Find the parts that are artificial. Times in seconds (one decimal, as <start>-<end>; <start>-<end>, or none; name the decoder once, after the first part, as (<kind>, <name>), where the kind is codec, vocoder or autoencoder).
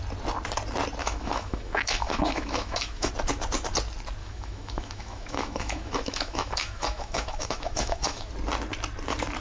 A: 1.0-3.1 (autoencoder, DAC-VAE); 4.2-8.3